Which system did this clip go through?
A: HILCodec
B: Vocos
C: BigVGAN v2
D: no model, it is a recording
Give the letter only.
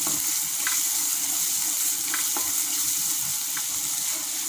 D